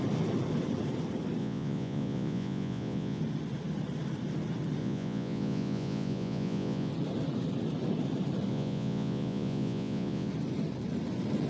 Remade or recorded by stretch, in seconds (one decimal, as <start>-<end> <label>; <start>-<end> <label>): 0.0-1.4 recorded; 1.4-3.2 remade; 3.2-4.8 recorded; 4.8-6.9 remade; 6.9-8.5 recorded; 8.5-10.3 remade; 10.3-11.5 recorded